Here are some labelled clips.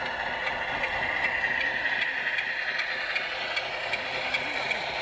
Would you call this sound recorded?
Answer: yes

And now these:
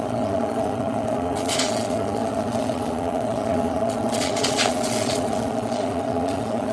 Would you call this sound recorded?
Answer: no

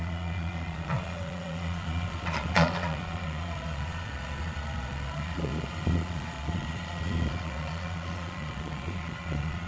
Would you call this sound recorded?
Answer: no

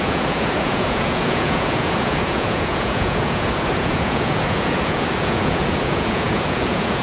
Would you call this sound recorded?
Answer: no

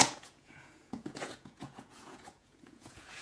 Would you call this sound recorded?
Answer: no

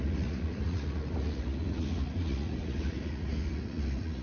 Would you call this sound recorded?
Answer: no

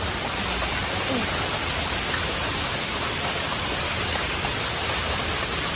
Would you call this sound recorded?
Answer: yes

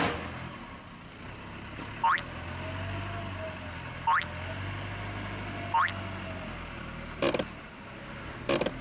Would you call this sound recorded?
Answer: yes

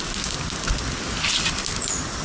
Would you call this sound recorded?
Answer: yes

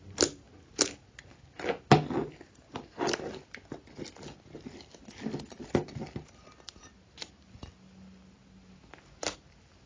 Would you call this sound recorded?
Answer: yes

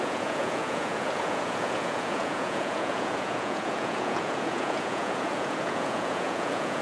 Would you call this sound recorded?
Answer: no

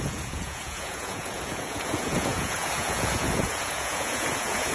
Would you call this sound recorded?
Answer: no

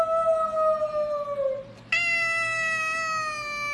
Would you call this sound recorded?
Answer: yes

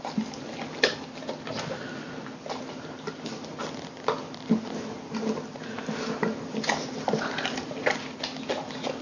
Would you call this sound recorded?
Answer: yes